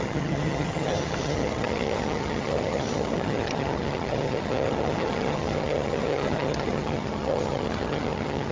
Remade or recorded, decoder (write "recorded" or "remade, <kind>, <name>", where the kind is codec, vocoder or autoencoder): remade, vocoder, HiFi-GAN